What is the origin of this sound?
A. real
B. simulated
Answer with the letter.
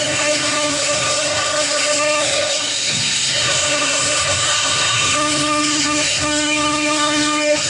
B